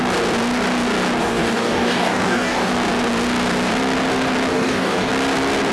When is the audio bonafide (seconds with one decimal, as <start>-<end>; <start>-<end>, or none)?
0.0-1.2; 2.7-4.5; 5.1-5.7

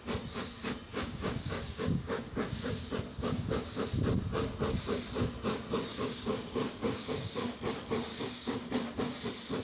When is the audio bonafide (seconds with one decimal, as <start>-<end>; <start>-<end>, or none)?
0.0-0.9; 2.7-3.1; 3.8-5.9; 7.6-8.1; 8.7-9.6